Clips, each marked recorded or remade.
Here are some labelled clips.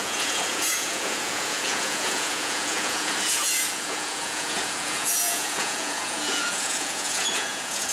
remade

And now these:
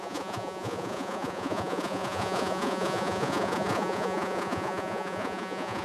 remade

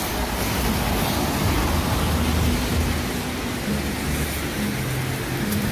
recorded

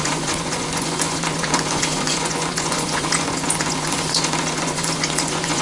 remade